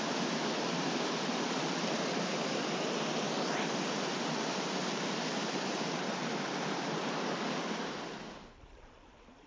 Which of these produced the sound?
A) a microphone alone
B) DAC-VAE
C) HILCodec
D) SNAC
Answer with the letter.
A